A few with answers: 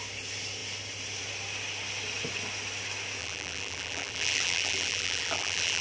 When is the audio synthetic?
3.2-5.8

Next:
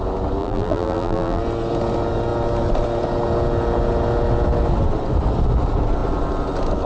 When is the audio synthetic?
0.4-1.4